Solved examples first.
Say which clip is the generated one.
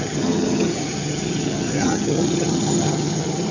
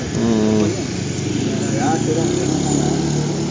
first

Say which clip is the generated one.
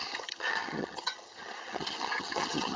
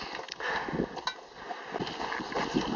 first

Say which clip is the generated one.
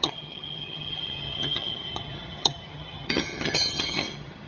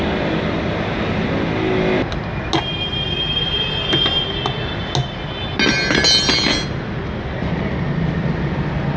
first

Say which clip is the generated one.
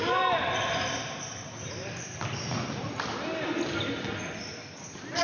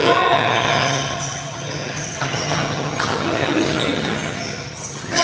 second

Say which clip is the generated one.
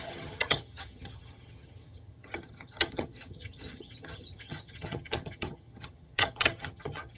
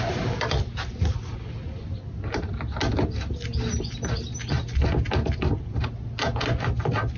first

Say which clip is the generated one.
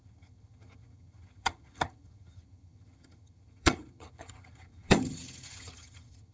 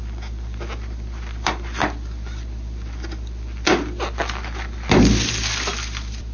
first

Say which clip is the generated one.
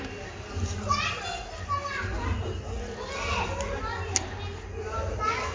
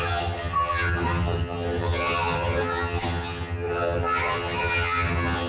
second